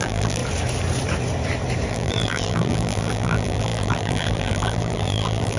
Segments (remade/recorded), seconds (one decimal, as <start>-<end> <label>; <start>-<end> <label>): 0.0-0.4 remade; 0.4-1.9 recorded; 1.9-5.6 remade

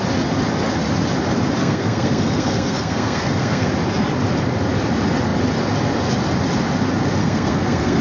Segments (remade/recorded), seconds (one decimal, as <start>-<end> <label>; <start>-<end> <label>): 0.0-1.6 recorded; 1.6-3.7 remade; 3.7-7.2 recorded; 7.2-8.0 remade

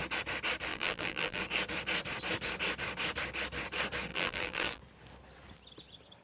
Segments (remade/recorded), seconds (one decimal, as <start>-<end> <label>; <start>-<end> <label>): 0.0-0.7 recorded; 0.7-1.4 remade; 1.4-4.1 recorded; 4.1-4.8 remade; 4.8-6.2 recorded

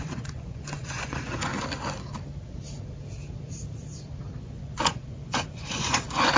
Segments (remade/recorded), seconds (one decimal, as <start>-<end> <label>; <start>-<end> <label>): 0.0-1.5 remade; 1.5-4.4 recorded; 4.4-6.4 remade

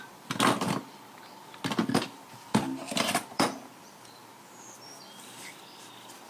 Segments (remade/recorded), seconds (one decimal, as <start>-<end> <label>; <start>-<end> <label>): 0.0-1.8 recorded; 1.8-5.3 remade; 5.3-6.3 recorded